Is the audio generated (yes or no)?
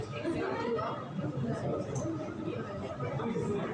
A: no